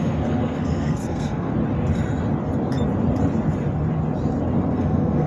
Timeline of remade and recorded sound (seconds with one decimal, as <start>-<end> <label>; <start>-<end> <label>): 0.0-1.5 remade; 1.5-4.7 recorded; 4.7-5.3 remade